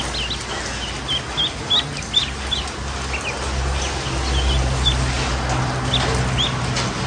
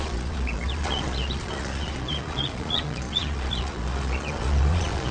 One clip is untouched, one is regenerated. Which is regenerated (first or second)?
second